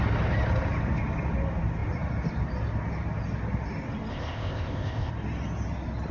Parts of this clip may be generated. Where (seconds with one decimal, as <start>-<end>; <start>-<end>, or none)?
4.1-5.1